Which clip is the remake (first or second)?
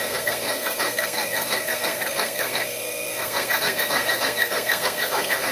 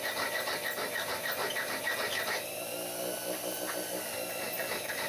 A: first